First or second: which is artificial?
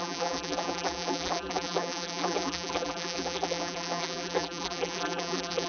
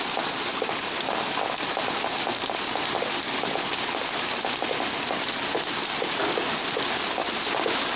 first